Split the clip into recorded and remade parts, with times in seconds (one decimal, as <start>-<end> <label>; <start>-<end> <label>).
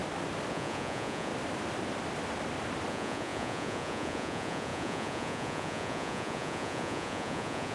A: 0.0-0.5 recorded; 0.5-1.3 remade; 1.3-2.9 recorded; 2.9-7.7 remade